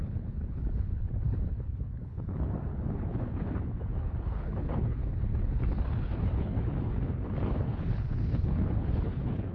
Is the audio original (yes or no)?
no